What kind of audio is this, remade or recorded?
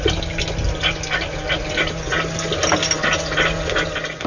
recorded